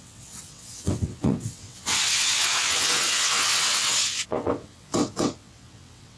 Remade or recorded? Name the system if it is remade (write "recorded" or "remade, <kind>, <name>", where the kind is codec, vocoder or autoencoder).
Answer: remade, vocoder, WaveNeXt